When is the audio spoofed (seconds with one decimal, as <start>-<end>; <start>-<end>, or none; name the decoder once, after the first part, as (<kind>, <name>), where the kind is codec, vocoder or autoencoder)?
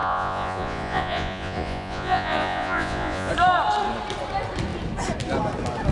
0.0-3.3 (vocoder, Vocos)